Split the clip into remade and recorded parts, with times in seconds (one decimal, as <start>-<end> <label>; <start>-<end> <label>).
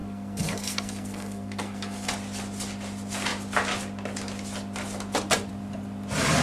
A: 0.0-2.1 remade; 2.1-6.4 recorded